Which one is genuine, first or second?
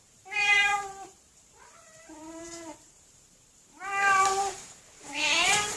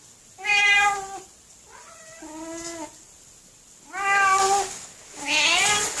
second